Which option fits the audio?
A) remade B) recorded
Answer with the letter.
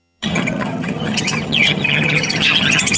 A